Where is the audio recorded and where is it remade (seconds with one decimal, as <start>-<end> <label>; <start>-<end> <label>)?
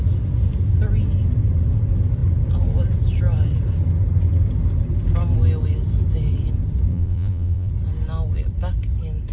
0.0-6.9 recorded; 6.9-7.7 remade; 7.7-9.3 recorded